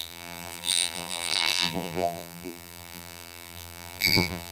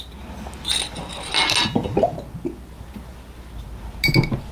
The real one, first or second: second